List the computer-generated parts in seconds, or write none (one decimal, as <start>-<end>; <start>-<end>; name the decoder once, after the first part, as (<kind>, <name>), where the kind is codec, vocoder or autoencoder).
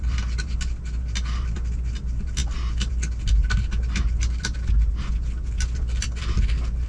none